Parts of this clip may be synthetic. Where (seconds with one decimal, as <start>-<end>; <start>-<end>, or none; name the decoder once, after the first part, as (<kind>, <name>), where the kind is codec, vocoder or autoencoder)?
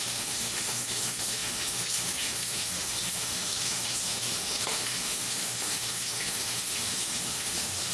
0.0-7.9 (autoencoder, DAC-VAE)